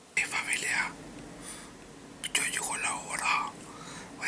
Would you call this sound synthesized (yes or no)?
no